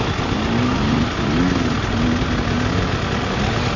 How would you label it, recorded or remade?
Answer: recorded